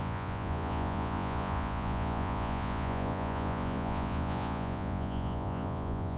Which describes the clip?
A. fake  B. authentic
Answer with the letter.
A